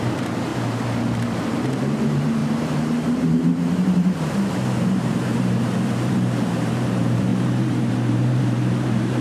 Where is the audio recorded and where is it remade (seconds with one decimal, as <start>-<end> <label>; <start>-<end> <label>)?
0.0-0.5 remade; 0.5-1.5 recorded; 1.5-9.2 remade